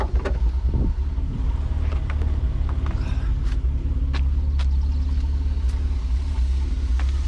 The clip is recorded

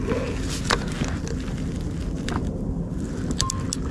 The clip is recorded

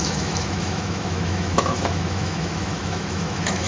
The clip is remade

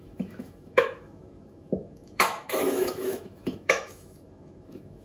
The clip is remade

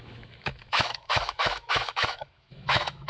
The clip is remade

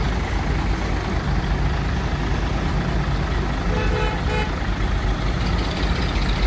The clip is recorded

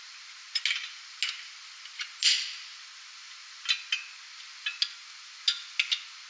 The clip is recorded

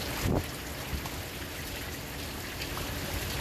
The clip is recorded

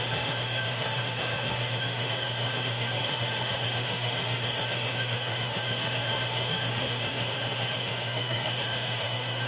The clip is remade